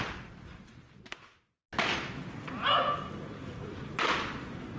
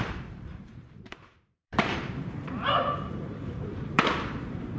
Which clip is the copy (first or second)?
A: second